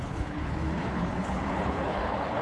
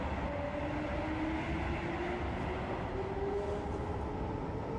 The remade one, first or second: first